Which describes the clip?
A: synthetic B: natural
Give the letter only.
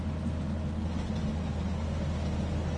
B